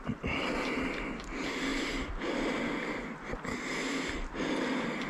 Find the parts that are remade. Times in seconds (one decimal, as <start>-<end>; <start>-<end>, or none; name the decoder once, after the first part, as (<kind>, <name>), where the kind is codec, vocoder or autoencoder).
none